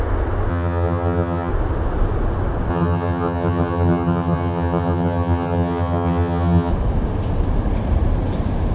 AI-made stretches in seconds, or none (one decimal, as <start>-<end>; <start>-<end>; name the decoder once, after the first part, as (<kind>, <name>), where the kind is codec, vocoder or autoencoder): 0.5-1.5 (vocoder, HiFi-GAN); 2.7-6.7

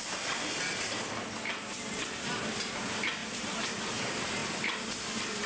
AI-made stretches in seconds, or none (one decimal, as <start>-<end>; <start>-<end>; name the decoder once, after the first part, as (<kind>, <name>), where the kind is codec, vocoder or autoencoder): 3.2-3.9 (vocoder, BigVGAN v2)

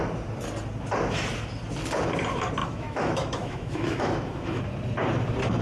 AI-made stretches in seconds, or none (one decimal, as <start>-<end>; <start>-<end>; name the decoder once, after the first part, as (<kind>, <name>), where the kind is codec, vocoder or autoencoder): 2.6-4.6 (autoencoder, DAC-VAE)